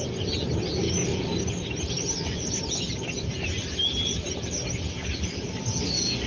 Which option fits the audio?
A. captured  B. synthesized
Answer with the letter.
A